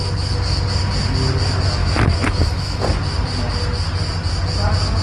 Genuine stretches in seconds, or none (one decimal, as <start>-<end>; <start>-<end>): 0.0-1.8; 2.8-5.0